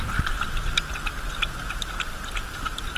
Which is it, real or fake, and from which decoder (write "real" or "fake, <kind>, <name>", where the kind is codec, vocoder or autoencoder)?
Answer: real